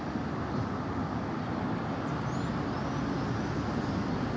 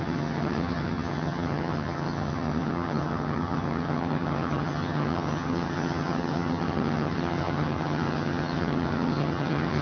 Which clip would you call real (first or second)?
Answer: first